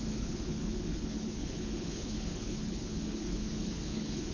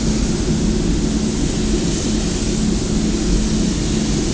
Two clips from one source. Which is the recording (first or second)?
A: second